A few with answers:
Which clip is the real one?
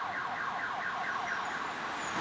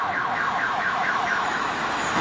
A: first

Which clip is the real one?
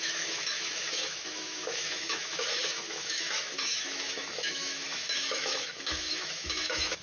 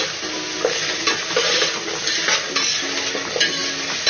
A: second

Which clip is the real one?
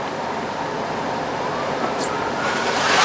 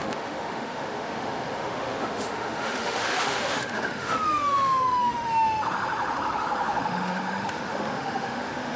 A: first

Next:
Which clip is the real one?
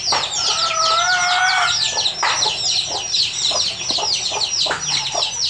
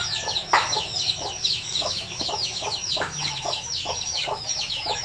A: first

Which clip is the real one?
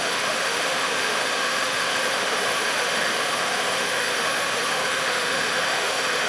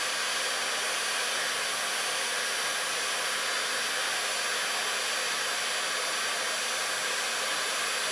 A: second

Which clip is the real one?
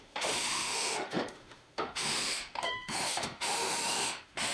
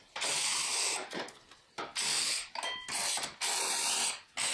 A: second